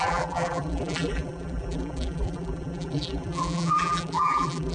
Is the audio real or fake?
fake